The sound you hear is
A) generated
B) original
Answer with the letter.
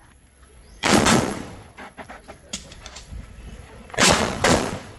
A